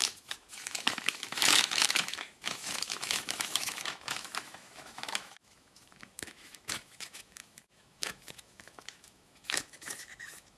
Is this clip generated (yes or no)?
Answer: yes